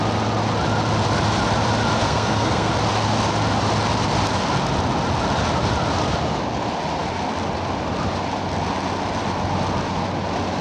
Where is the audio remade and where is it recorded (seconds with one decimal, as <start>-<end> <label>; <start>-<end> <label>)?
0.0-2.0 recorded; 2.0-2.7 remade; 2.7-10.6 recorded